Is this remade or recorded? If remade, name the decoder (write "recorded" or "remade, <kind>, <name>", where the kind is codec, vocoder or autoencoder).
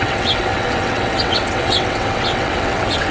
remade, vocoder, WaveNeXt